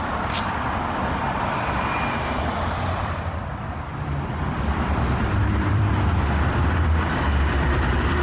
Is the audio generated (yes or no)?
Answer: yes